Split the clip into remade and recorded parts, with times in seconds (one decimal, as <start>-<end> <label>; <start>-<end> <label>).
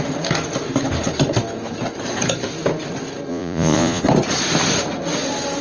0.0-3.3 recorded; 3.3-4.0 remade; 4.0-5.6 recorded